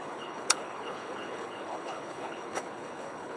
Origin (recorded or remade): remade